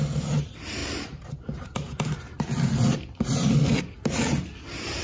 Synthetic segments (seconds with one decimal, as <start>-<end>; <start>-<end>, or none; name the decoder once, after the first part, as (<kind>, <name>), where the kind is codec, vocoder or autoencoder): 0.8-3.8 (vocoder, BigVGAN v2)

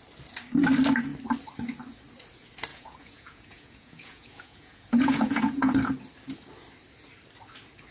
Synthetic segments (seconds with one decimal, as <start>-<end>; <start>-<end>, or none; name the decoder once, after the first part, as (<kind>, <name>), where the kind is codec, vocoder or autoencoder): 2.7-5.8 (vocoder, Vocos)

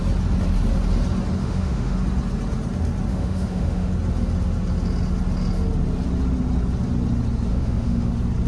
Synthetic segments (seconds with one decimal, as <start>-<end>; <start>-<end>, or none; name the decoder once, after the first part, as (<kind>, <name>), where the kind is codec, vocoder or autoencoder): 1.4-2.0 (autoencoder, DAC-VAE); 3.1-3.9; 7.5-8.1

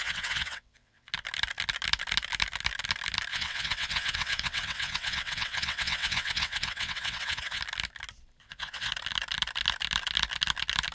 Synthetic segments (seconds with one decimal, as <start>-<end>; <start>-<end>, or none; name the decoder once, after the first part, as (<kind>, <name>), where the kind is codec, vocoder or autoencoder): 0.0-1.1 (vocoder, WaveNeXt); 3.3-7.6; 8.4-8.9

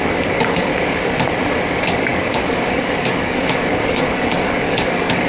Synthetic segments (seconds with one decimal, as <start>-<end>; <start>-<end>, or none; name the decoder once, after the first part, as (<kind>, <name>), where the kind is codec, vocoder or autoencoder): 0.0-0.7 (codec, DAC); 1.7-5.3

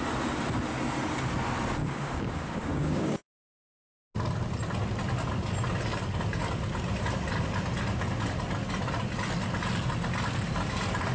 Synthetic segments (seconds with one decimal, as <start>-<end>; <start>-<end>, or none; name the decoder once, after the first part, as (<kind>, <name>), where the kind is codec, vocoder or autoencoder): 1.8-4.1 (codec, DAC)

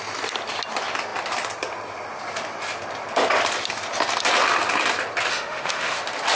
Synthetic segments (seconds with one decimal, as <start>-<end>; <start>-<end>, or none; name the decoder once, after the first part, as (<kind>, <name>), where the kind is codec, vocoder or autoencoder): 5.3-6.0 (autoencoder, DAC-VAE)